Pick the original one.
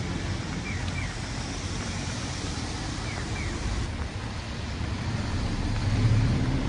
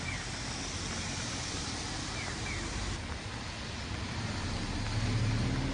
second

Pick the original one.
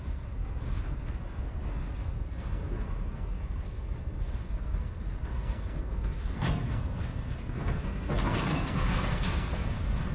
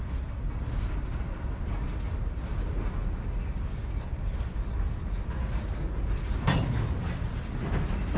second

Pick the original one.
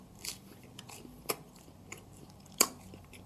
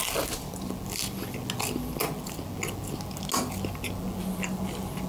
second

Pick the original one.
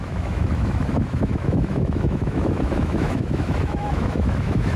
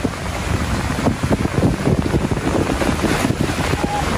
second